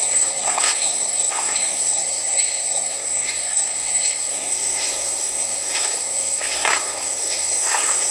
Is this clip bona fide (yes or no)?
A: no